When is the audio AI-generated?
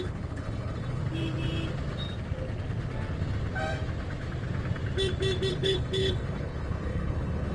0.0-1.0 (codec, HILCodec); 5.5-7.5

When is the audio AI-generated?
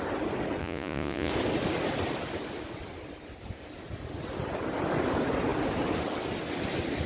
0.6-1.3 (vocoder, Vocos)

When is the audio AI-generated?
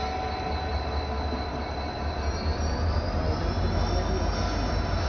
none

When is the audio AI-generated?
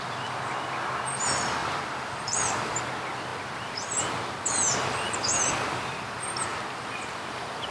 1.6-2.8 (vocoder, BigVGAN v2)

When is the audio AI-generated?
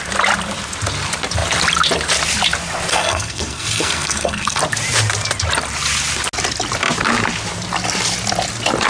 2.9-4.6 (codec, SNAC)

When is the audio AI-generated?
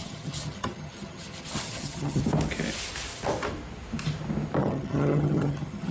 0.0-2.2 (vocoder, HiFi-GAN); 4.6-5.9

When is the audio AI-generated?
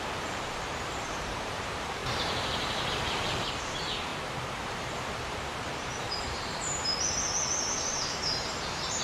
0.0-4.1 (vocoder, BigVGAN v2); 4.7-6.9; 7.5-9.0